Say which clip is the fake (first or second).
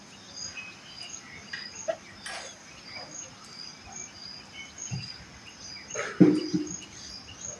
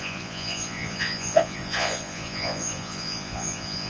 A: second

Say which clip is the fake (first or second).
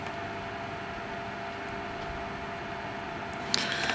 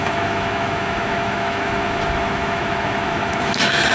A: second